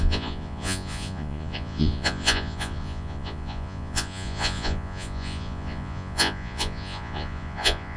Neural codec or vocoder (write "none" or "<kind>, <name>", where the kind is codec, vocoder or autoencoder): vocoder, Vocos